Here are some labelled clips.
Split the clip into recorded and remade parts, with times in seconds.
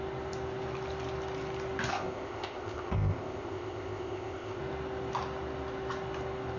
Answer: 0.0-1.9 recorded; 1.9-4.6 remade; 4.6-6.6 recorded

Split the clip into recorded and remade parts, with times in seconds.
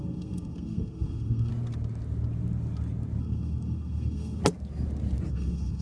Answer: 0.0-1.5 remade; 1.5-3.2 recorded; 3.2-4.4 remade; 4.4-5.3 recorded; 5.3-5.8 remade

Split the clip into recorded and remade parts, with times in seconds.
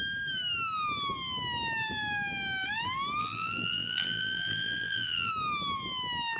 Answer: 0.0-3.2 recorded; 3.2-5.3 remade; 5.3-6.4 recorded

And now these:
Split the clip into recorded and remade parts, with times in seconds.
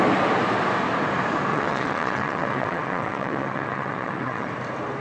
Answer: 0.0-1.5 recorded; 1.5-4.5 remade; 4.5-5.0 recorded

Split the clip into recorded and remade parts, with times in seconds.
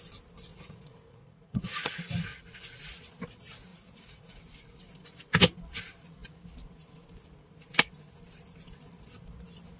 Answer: 0.0-0.5 recorded; 0.5-2.1 remade; 2.1-3.7 recorded; 3.7-4.4 remade; 4.4-9.8 recorded